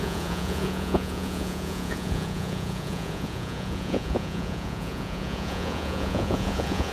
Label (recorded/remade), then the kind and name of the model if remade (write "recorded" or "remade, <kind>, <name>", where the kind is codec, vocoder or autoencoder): remade, vocoder, Vocos